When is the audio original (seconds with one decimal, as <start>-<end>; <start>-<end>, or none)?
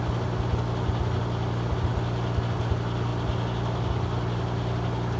0.0-5.2